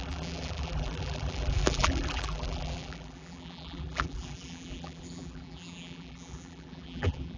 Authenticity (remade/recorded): remade